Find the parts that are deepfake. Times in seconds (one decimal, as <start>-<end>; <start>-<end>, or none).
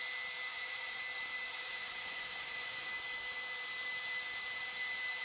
0.5-1.0; 1.5-2.9